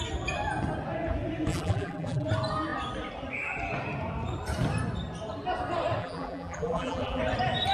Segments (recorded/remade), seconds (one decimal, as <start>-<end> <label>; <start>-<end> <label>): 0.0-1.5 recorded; 1.5-2.3 remade; 2.3-6.0 recorded; 6.0-7.2 remade; 7.2-7.7 recorded